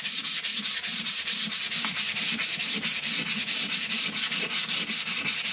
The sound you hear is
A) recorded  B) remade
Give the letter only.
A